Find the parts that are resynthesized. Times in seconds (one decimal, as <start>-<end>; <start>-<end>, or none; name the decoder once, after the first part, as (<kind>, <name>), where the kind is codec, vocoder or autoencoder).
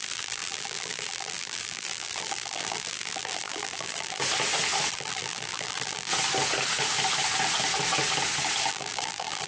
0.0-4.2 (vocoder, BigVGAN v2); 4.9-6.1; 8.7-9.5